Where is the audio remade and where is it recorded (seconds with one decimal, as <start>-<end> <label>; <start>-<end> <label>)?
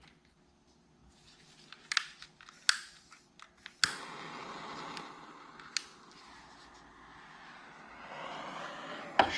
0.0-9.4 recorded